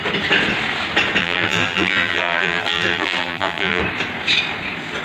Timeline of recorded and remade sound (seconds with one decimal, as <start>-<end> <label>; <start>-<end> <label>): 0.0-1.2 recorded; 1.2-3.8 remade; 3.8-5.0 recorded